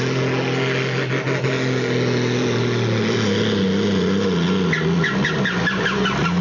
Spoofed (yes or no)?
no